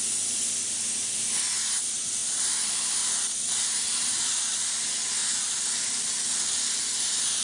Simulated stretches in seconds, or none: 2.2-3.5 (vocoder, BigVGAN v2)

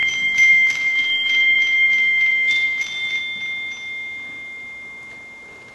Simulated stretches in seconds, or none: 0.0-3.2 (vocoder, BigVGAN v2)

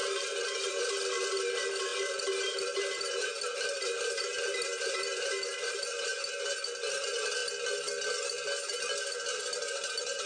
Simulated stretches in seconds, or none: 0.0-6.1 (vocoder, BigVGAN v2); 6.9-7.4; 9.4-10.3

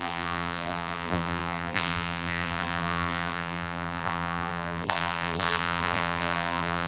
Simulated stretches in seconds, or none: 0.0-6.9 (vocoder, BigVGAN v2)

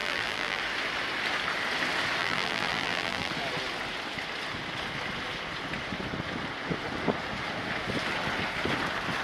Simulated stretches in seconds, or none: 0.0-0.6 (vocoder, BigVGAN v2); 2.2-3.3

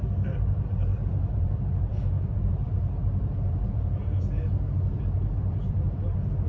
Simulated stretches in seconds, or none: 0.0-1.9 (vocoder, BigVGAN v2); 2.5-6.5